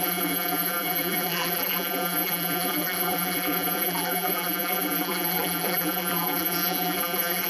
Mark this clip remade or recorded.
remade